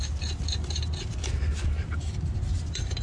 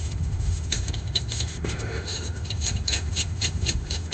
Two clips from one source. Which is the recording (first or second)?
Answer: first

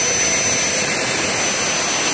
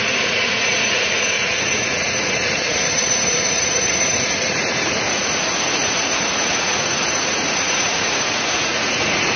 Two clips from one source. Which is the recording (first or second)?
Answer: first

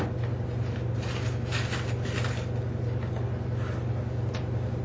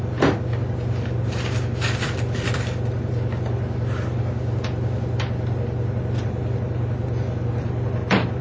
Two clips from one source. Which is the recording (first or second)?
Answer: first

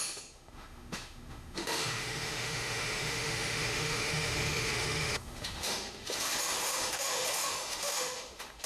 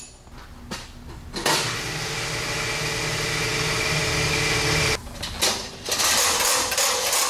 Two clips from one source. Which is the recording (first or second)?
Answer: second